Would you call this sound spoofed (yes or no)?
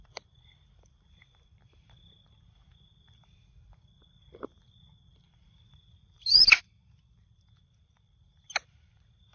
yes